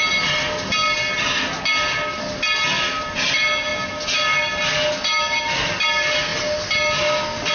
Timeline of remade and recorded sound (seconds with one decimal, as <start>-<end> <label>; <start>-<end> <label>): 0.0-7.5 recorded